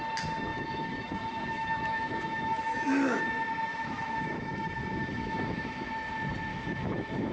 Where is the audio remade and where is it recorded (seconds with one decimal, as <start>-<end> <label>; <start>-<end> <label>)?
0.0-0.5 recorded; 0.5-3.2 remade; 3.2-3.7 recorded; 3.7-5.9 remade; 5.9-6.5 recorded; 6.5-7.3 remade